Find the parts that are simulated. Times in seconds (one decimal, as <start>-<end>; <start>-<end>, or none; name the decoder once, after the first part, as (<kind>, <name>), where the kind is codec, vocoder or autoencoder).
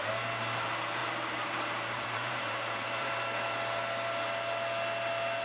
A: 1.0-3.1 (vocoder, BigVGAN v2)